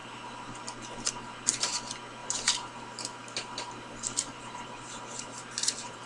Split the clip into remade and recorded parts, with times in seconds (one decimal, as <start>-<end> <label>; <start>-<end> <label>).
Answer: 0.0-2.2 recorded; 2.2-6.1 remade